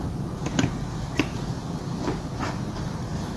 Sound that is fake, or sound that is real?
real